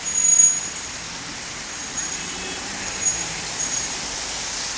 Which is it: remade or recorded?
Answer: recorded